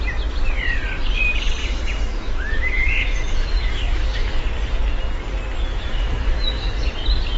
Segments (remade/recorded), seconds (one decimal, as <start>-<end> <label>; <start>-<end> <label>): 0.0-1.6 recorded; 1.6-4.4 remade; 4.4-5.7 recorded; 5.7-6.8 remade; 6.8-7.4 recorded